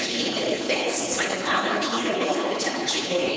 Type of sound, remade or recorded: remade